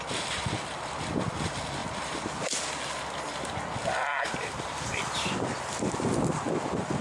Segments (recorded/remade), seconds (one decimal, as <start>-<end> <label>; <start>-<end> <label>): 0.0-4.1 recorded; 4.1-5.3 remade; 5.3-7.0 recorded